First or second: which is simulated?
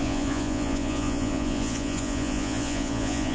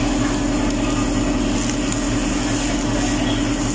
first